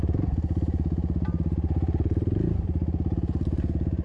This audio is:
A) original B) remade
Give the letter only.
B